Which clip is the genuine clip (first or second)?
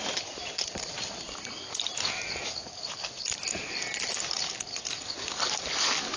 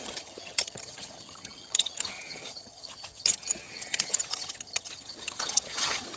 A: first